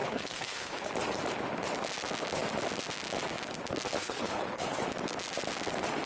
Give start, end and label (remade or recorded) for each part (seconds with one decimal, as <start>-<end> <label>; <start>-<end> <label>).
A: 0.0-0.9 remade; 0.9-4.0 recorded; 4.0-4.8 remade; 4.8-6.1 recorded